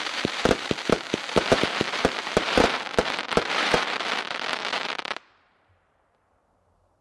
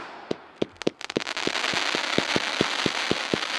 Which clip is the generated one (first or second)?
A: first